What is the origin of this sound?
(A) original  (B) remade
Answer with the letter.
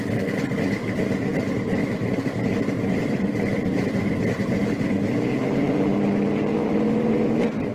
B